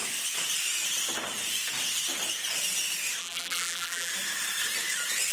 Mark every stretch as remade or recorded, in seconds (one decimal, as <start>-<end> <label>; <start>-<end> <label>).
0.0-3.2 recorded; 3.2-4.1 remade; 4.1-5.3 recorded